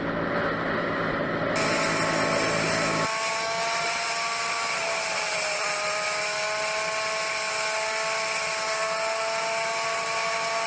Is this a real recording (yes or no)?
yes